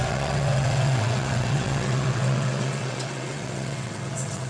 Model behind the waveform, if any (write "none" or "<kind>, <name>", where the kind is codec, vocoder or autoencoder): vocoder, WaveNeXt